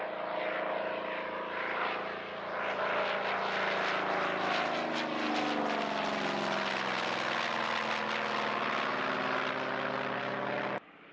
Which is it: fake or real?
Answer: real